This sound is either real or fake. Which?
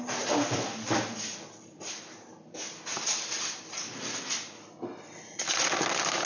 real